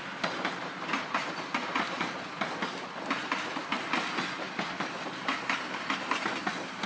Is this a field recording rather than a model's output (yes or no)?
yes